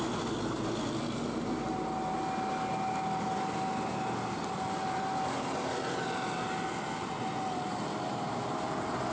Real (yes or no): yes